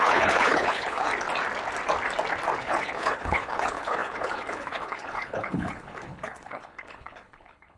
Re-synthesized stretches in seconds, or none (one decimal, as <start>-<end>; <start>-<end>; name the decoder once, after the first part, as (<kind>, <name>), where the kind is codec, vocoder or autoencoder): 0.0-1.1 (codec, HILCodec); 2.6-7.8